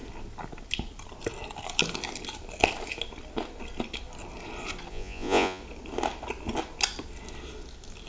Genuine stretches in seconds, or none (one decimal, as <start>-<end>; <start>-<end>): 0.0-4.9; 5.6-8.1

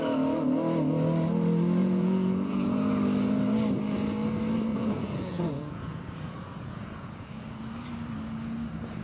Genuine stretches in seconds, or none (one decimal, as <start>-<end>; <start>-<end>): 0.0-1.8; 3.0-4.7; 7.6-9.0

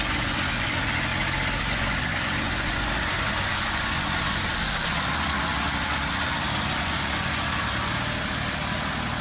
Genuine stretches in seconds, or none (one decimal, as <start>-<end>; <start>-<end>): 1.1-1.6; 7.6-9.2

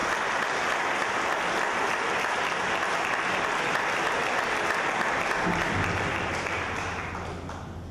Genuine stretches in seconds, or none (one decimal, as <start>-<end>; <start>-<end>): 0.0-7.9

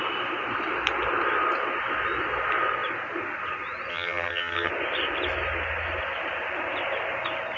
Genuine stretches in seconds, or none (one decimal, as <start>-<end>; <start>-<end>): 0.0-3.9; 4.7-7.6

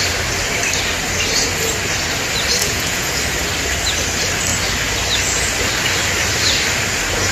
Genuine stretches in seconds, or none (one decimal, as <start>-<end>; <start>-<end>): 0.0-2.6; 3.2-7.3

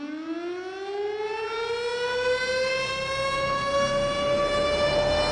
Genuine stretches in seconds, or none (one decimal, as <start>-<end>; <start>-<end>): 0.0-5.3